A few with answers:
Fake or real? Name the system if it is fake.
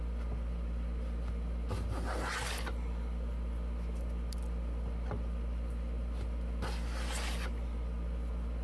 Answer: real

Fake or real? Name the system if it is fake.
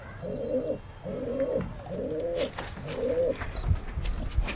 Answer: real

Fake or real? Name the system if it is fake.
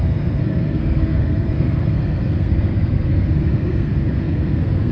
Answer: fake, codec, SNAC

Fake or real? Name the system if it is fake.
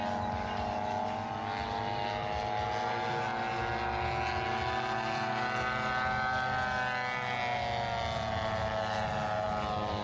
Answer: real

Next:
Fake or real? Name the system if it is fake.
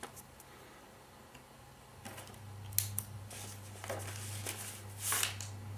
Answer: real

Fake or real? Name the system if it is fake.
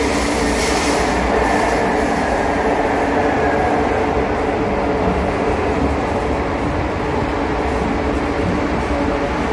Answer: real